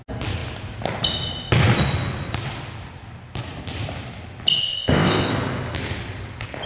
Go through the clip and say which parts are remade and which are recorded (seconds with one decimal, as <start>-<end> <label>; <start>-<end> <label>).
0.0-4.6 recorded; 4.6-5.3 remade; 5.3-6.7 recorded